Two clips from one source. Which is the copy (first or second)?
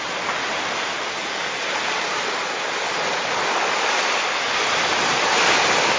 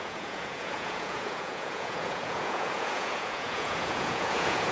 second